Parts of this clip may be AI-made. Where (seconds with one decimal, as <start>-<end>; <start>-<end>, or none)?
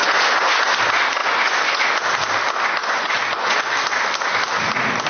0.0-0.6; 1.2-1.8; 2.8-3.7